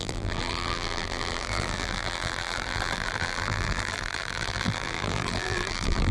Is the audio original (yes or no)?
no